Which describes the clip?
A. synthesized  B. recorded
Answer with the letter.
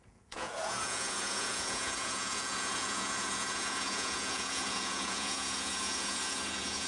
A